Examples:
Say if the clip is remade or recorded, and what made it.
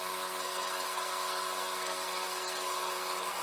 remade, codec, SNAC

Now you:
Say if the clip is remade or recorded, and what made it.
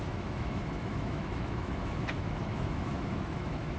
remade, autoencoder, DAC-VAE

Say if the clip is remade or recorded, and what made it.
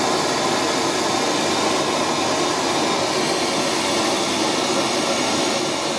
recorded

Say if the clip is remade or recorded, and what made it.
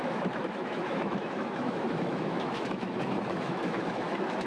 remade, autoencoder, DAC-VAE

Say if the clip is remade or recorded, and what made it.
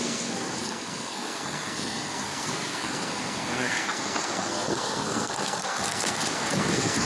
remade, codec, SNAC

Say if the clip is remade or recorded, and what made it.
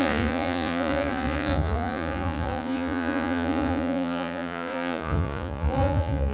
remade, vocoder, Vocos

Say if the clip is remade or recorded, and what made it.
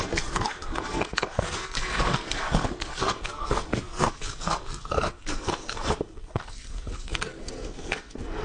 remade, codec, SNAC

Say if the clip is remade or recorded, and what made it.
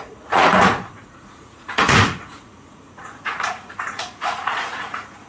remade, vocoder, Vocos